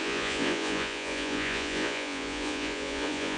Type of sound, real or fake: fake